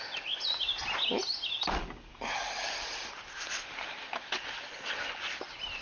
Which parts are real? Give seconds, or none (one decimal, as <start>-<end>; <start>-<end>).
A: 0.0-5.8